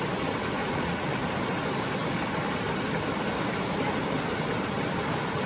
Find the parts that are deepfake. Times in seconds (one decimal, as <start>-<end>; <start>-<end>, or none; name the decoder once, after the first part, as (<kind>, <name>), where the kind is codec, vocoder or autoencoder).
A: 0.6-1.1 (vocoder, Vocos)